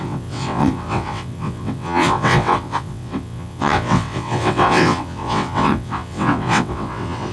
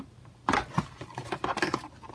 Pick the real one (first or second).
second